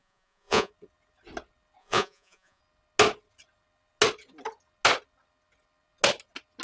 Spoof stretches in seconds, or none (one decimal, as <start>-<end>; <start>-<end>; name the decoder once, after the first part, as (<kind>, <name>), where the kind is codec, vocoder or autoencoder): 0.0-0.7 (vocoder, Vocos); 1.8-2.6